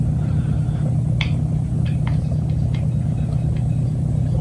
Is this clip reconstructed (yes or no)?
no